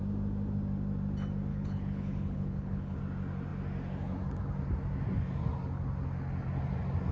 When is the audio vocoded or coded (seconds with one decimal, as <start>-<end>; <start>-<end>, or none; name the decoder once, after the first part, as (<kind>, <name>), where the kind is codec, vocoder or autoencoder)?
1.5-3.0 (codec, HILCodec)